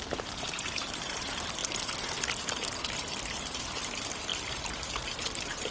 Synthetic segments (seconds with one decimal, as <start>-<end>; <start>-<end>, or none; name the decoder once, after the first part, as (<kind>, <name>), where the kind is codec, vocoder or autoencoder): 0.0-1.6 (vocoder, BigVGAN v2); 3.2-5.7